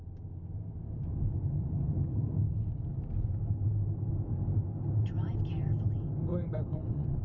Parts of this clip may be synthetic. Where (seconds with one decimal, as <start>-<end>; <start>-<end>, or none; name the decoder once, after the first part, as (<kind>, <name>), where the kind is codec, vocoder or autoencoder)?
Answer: 6.3-7.2 (vocoder, Vocos)